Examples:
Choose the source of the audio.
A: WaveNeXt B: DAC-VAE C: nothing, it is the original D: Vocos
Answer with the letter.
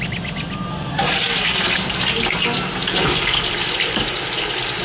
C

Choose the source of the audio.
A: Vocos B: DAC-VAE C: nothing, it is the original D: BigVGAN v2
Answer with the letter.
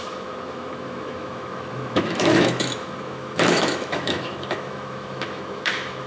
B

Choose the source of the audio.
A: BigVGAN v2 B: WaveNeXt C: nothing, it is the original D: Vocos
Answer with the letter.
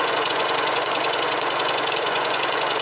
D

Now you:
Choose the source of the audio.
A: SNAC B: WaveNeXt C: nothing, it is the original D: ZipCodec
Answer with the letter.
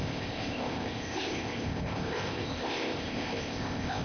D